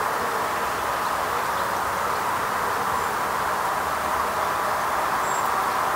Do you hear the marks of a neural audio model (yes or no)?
no